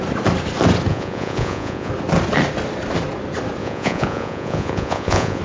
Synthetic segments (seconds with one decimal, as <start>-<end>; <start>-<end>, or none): 0.9-1.9; 3.6-5.4